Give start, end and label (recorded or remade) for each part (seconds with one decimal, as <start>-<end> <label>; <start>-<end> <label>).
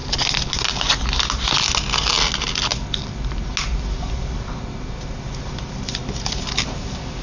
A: 0.0-7.2 recorded